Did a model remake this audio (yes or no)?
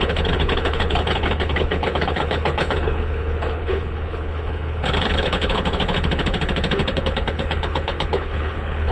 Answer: yes